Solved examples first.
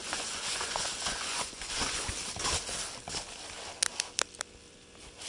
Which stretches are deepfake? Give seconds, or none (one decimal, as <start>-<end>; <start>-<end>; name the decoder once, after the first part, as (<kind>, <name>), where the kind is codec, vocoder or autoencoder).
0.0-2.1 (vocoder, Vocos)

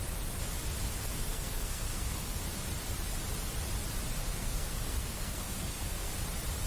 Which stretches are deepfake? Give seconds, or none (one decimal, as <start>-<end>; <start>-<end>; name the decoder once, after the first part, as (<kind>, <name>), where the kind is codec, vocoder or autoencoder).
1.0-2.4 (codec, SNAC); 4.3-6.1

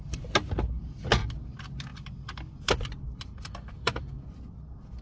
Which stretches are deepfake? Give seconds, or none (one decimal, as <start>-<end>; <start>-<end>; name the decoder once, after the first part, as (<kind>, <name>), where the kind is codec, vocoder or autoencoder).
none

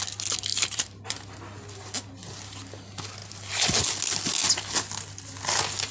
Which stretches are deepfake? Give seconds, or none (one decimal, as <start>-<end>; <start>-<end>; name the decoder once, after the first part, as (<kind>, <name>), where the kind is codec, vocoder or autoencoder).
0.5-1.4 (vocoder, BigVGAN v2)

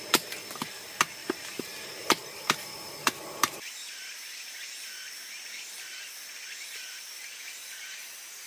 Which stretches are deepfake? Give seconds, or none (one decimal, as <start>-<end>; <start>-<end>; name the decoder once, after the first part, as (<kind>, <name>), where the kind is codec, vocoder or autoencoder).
1.2-4.2 (vocoder, BigVGAN v2); 7.6-8.5

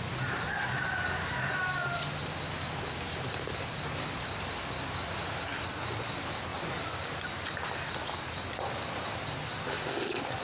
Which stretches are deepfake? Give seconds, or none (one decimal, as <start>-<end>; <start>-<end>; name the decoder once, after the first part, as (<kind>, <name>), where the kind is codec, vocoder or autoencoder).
none

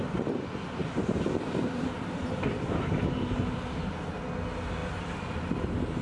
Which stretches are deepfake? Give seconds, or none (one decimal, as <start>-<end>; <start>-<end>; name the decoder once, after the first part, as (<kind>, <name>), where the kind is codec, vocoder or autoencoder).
0.8-4.0 (vocoder, BigVGAN v2); 4.8-5.5